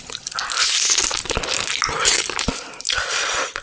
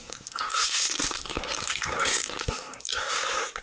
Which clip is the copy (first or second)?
second